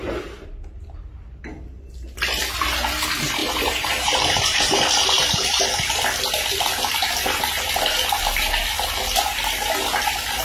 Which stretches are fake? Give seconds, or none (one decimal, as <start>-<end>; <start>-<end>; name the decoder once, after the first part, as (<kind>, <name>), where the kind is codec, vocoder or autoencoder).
3.4-5.6 (vocoder, BigVGAN v2)